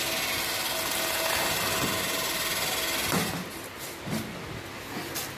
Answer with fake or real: real